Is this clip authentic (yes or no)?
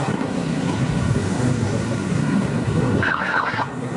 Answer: no